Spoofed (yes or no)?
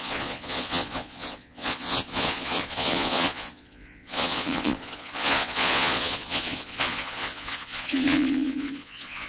yes